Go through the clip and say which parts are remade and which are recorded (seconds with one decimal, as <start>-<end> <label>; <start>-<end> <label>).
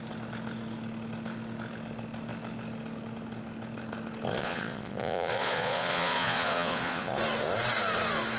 0.0-4.4 recorded; 4.4-7.1 remade; 7.1-8.4 recorded